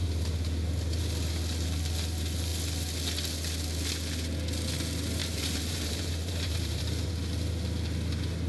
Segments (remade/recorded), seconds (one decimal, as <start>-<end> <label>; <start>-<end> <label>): 0.0-5.2 recorded; 5.2-7.1 remade; 7.1-8.5 recorded